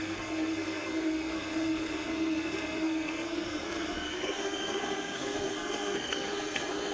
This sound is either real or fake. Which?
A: fake